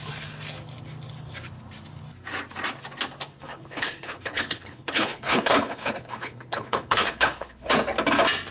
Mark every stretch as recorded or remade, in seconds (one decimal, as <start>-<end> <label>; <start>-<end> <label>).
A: 0.0-3.3 recorded; 3.3-7.7 remade; 7.7-8.5 recorded